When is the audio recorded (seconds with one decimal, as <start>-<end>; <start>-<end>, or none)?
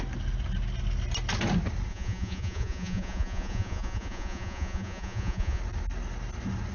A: 0.0-1.9; 5.6-6.7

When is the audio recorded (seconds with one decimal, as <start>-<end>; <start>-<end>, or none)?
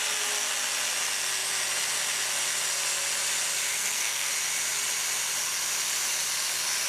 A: 0.0-3.7; 4.3-6.9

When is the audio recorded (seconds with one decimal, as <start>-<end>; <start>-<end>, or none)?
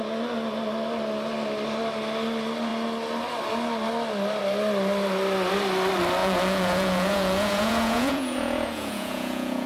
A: 0.0-6.2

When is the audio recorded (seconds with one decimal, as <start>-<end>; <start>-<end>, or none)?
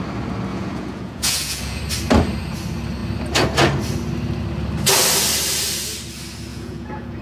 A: 0.0-0.5; 1.8-6.5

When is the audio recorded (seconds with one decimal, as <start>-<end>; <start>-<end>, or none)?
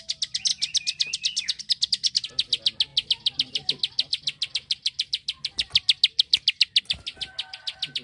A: 0.0-8.0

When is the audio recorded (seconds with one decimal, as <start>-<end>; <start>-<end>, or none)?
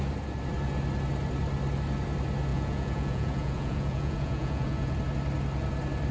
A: 0.0-2.5; 4.9-6.1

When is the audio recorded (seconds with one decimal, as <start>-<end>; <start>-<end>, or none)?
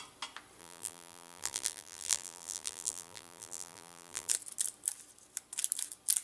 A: 0.0-0.6; 4.3-6.2